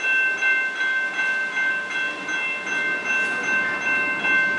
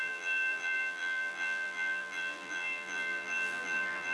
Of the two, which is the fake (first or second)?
second